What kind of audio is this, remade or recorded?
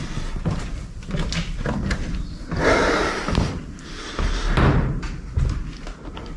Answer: recorded